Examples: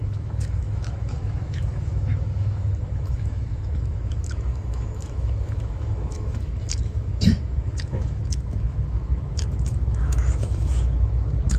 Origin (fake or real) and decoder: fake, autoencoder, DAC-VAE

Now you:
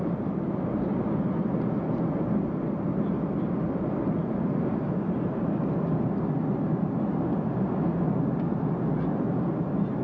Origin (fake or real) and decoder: real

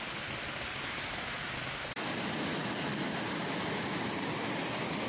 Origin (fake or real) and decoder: real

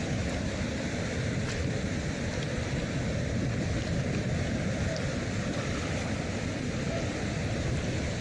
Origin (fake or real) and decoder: real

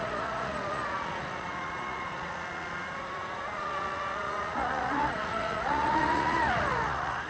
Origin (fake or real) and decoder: fake, vocoder, Vocos